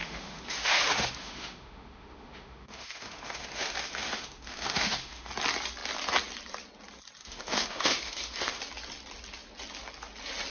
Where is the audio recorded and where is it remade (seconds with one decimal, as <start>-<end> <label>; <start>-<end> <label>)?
0.0-5.3 remade; 5.3-7.2 recorded; 7.2-8.6 remade; 8.6-10.5 recorded